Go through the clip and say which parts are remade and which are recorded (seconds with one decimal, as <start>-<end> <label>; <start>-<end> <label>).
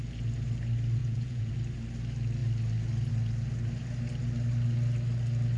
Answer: 0.0-1.0 recorded; 1.0-1.5 remade; 1.5-5.6 recorded